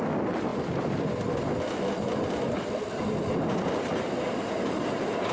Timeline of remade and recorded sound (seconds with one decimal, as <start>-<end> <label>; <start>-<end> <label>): 0.0-5.3 recorded